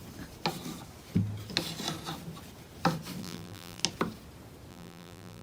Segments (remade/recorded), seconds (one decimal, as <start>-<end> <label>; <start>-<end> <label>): 0.0-3.2 recorded; 3.2-3.8 remade; 3.8-4.7 recorded; 4.7-5.4 remade